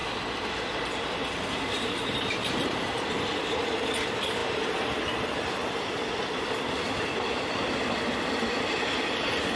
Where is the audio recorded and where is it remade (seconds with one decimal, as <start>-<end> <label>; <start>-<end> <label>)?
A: 0.0-9.6 recorded

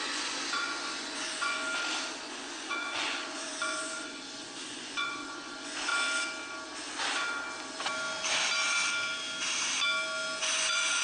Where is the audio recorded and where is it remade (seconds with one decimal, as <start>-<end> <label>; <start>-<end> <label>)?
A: 0.0-1.6 remade; 1.6-2.2 recorded; 2.2-5.9 remade; 5.9-10.4 recorded; 10.4-11.0 remade

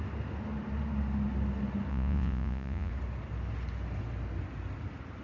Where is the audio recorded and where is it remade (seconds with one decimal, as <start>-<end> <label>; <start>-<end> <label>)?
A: 0.0-1.9 recorded; 1.9-2.9 remade; 2.9-5.2 recorded